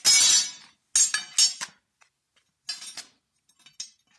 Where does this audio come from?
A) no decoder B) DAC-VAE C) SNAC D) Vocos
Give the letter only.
A